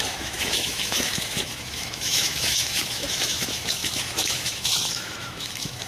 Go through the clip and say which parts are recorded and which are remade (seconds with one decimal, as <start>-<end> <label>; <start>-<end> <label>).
0.0-5.9 remade